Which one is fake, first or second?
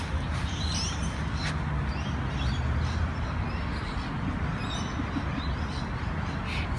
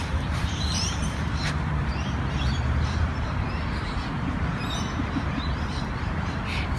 second